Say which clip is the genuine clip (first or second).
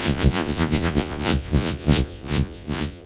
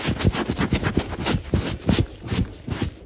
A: second